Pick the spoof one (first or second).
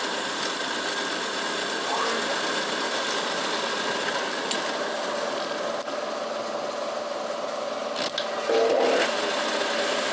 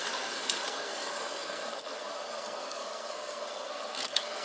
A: second